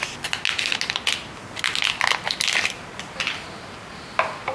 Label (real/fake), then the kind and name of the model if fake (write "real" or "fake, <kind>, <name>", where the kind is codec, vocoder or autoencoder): real